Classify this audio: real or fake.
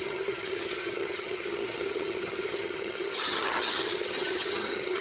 fake